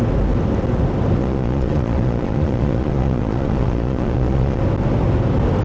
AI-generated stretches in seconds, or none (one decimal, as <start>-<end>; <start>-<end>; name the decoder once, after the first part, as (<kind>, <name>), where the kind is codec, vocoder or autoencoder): 1.2-4.6 (vocoder, Vocos)